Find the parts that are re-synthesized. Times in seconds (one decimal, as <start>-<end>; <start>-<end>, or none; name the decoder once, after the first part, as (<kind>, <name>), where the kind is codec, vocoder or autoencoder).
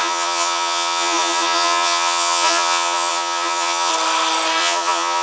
0.0-3.9 (vocoder, Vocos); 4.6-5.2